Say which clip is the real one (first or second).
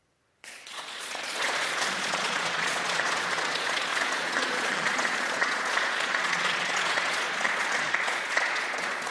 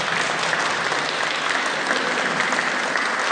second